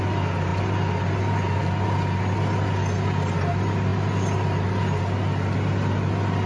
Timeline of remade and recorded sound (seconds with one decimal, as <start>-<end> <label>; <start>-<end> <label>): 0.0-6.5 recorded